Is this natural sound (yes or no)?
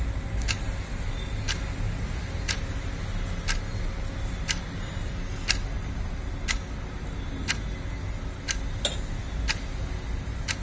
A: yes